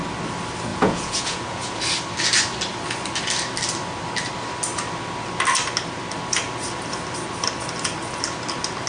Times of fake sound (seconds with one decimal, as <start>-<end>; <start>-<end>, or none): 0.7-1.8